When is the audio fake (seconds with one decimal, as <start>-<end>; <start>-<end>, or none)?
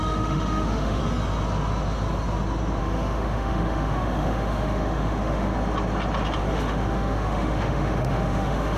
0.0-1.0; 2.8-5.5; 6.4-8.8